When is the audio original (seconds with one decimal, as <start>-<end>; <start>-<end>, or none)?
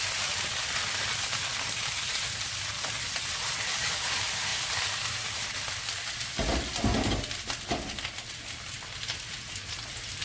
0.0-10.2